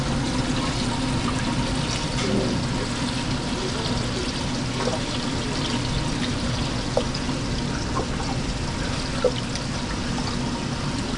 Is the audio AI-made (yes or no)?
no